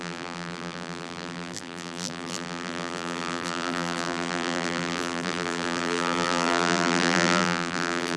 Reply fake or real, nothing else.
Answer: fake